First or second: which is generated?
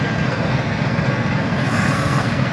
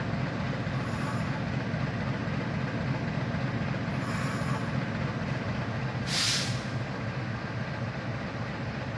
first